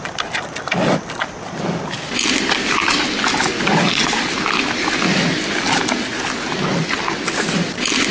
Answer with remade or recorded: recorded